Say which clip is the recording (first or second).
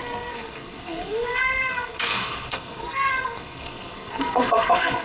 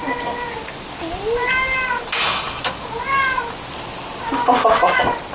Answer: second